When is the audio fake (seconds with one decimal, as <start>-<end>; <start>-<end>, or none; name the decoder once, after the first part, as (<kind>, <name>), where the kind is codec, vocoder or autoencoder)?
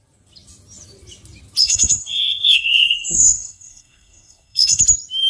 1.6-4.8 (codec, SNAC)